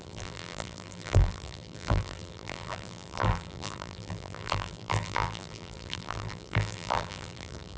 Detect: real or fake fake